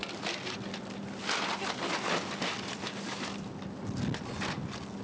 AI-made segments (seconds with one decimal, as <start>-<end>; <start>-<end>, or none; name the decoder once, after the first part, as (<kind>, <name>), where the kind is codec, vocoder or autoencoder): none